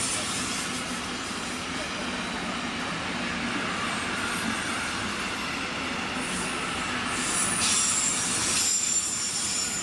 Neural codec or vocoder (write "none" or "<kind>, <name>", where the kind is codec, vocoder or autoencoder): none